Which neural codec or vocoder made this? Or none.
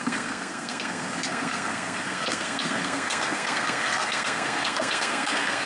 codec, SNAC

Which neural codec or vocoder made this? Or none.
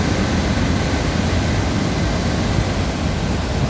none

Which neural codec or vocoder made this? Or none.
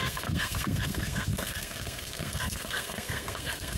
codec, SNAC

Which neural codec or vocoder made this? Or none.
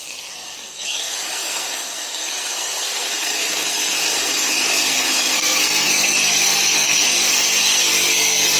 codec, SNAC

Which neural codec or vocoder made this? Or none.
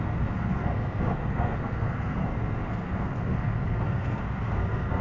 codec, SNAC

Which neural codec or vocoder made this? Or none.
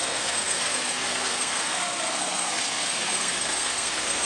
codec, SNAC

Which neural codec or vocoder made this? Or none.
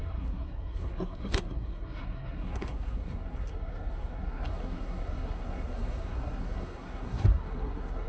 codec, SNAC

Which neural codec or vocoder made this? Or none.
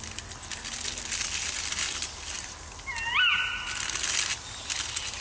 none